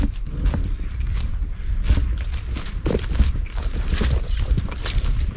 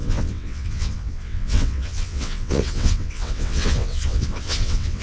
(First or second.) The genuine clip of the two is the first